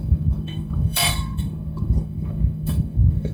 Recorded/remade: remade